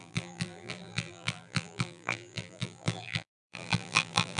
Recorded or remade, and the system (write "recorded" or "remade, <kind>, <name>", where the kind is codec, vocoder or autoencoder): remade, vocoder, BigVGAN v2